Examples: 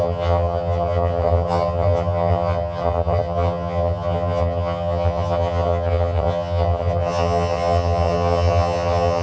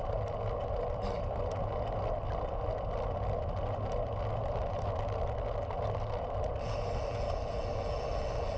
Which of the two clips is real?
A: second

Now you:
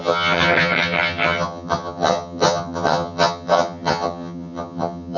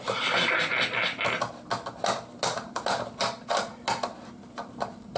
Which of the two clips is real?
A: second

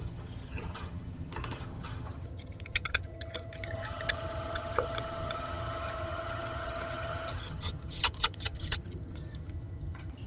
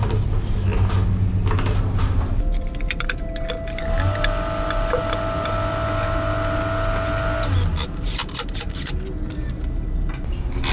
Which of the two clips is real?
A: second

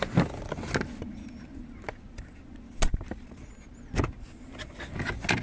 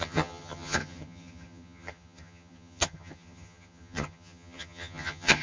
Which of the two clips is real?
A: first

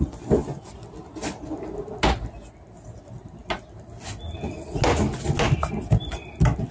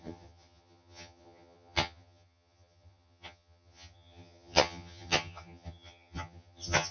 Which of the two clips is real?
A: first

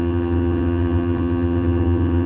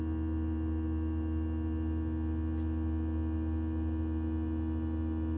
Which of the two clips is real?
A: second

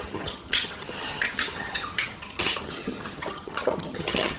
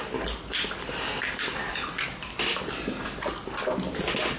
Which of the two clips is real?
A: second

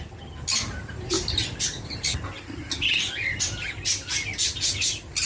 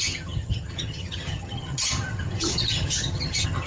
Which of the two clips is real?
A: first